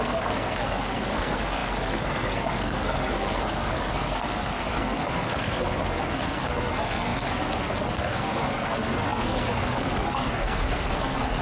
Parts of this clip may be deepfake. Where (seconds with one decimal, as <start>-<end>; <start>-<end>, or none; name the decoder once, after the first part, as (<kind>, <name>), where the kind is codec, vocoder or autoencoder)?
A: 0.0-11.4 (codec, SNAC)